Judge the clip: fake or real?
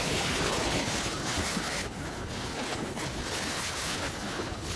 fake